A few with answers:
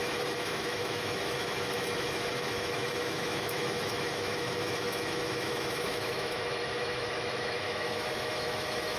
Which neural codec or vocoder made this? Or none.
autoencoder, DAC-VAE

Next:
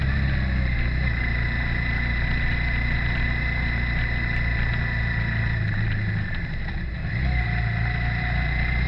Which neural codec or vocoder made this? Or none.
none